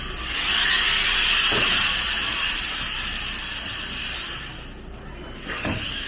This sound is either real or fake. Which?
real